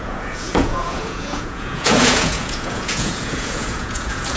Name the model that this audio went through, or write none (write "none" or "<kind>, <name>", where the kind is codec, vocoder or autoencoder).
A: vocoder, Vocos